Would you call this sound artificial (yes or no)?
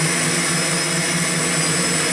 no